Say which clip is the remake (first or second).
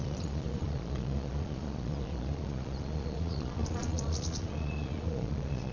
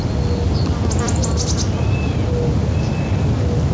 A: first